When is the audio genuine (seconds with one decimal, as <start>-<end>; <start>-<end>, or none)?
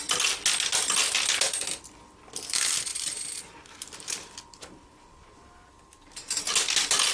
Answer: 0.0-2.9; 6.4-7.1